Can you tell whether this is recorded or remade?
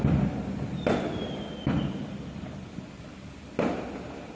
recorded